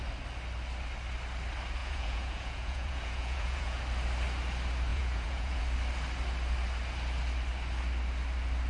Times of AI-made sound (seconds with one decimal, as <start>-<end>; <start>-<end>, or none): 1.8-3.8; 4.9-5.6